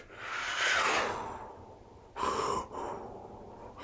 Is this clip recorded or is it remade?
recorded